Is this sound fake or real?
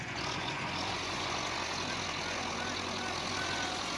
fake